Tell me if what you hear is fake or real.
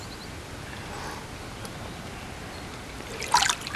real